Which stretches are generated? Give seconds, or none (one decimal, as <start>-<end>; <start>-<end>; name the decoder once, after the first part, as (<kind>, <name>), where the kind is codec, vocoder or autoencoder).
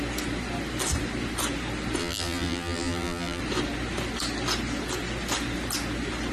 2.0-3.4 (vocoder, BigVGAN v2)